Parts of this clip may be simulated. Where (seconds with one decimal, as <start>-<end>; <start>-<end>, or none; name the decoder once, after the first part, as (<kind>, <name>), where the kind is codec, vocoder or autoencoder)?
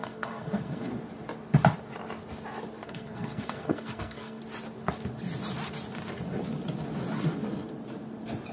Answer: 0.0-0.9 (codec, SNAC); 2.8-4.4